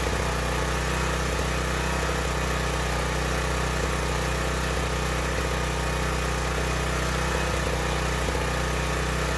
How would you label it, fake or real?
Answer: real